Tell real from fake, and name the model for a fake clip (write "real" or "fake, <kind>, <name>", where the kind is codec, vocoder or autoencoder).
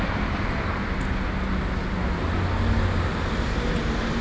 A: real